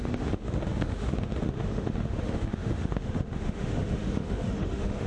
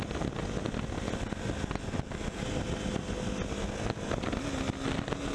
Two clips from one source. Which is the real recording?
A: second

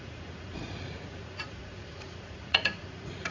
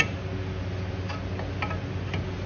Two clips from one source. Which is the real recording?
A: second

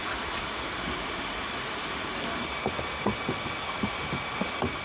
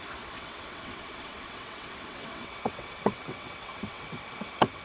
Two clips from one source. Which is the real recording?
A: first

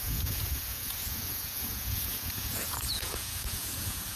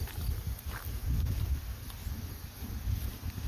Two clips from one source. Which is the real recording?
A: second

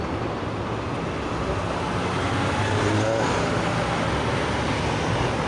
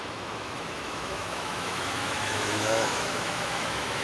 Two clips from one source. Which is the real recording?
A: first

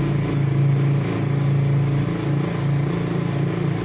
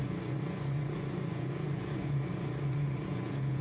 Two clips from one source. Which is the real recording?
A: first